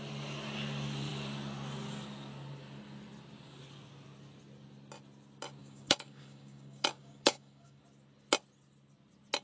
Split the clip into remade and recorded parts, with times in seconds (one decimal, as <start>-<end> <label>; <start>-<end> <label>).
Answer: 0.0-5.6 recorded; 5.6-7.8 remade; 7.8-9.4 recorded